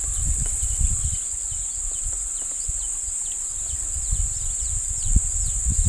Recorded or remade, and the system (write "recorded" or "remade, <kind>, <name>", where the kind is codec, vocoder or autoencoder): recorded